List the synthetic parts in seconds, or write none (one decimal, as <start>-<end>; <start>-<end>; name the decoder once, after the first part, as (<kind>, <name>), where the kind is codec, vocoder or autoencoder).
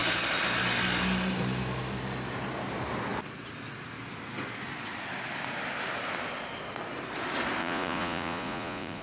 7.6-9.0 (vocoder, Vocos)